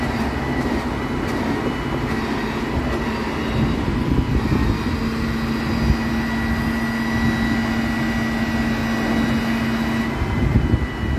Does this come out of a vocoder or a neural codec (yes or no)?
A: no